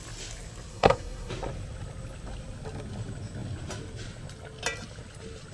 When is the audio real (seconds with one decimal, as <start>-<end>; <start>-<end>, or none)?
0.0-0.7; 1.3-5.5